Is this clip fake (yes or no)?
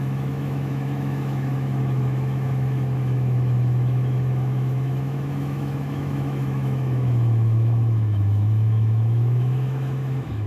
yes